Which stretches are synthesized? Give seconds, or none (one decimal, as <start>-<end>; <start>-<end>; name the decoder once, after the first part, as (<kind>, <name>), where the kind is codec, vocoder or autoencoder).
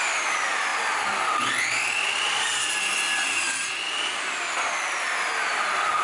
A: none